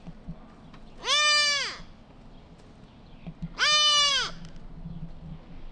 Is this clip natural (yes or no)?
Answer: yes